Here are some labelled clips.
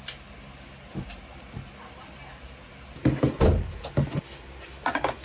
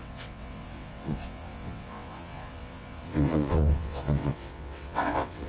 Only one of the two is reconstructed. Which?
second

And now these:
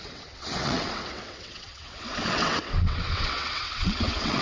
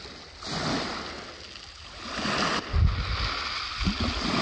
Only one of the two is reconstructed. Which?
first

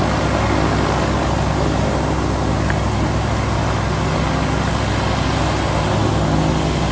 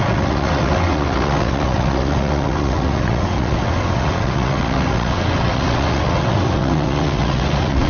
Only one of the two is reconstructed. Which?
second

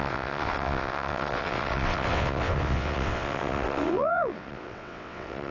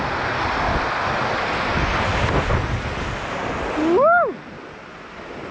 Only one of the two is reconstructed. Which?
first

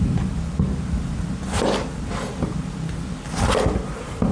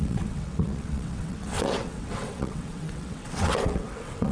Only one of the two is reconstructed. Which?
second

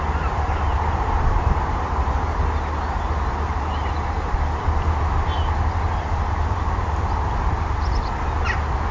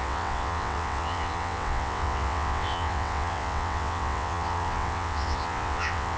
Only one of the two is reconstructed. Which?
second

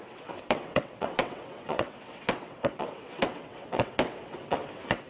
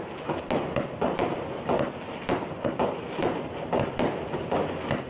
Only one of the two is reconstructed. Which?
first